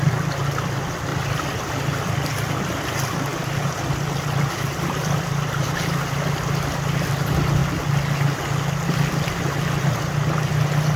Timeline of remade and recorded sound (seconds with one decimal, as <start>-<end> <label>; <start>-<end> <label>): 0.0-1.1 recorded; 1.1-2.5 remade; 2.5-3.3 recorded; 3.3-6.4 remade; 6.4-11.0 recorded